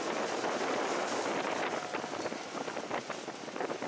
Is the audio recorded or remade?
recorded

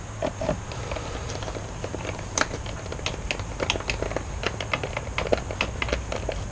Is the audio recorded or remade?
recorded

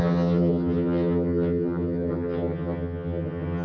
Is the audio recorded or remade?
remade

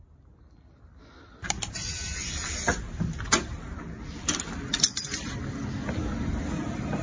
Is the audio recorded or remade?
recorded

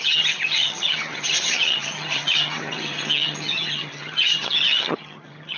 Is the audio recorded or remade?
remade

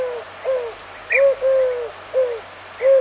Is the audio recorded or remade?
recorded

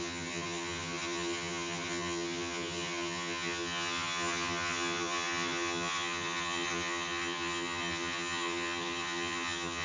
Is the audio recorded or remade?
remade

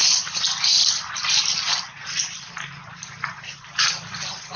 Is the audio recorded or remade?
recorded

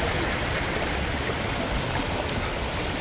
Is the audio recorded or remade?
recorded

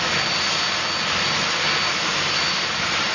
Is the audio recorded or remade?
recorded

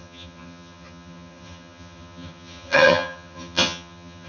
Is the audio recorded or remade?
remade